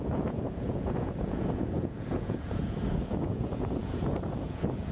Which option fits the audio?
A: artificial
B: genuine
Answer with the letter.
A